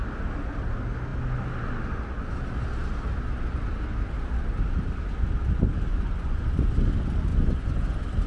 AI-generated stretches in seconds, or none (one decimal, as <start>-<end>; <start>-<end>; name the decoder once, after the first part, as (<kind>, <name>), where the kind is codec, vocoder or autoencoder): 5.9-6.7 (vocoder, Vocos); 7.3-7.8